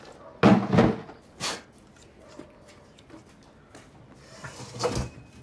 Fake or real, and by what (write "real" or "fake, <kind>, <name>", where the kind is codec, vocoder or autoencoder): real